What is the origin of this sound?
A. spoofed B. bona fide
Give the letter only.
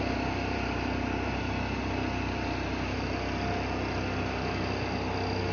B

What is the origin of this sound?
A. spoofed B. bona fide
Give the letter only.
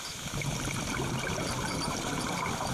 B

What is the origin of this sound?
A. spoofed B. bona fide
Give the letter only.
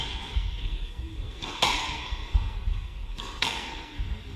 A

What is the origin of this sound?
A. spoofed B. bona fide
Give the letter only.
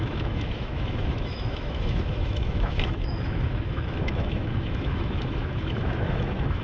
A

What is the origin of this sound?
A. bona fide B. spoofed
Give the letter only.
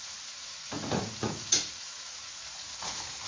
B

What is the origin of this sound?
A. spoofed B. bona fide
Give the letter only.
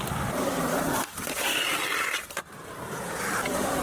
A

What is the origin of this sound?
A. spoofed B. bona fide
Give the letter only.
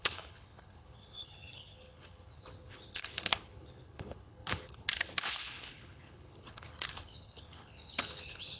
A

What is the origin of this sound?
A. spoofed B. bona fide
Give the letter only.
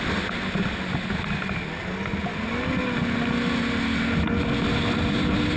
B